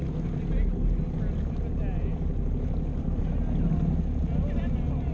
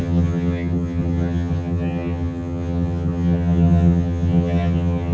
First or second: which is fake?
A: second